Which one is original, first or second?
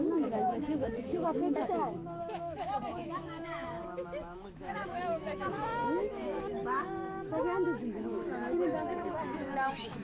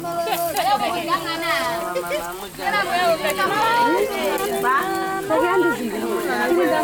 second